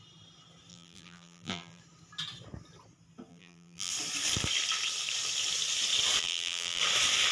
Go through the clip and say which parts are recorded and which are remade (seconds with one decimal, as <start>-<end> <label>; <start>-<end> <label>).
0.0-0.7 recorded; 0.7-1.8 remade; 1.8-3.3 recorded; 3.3-3.9 remade; 3.9-6.2 recorded; 6.2-6.8 remade; 6.8-7.3 recorded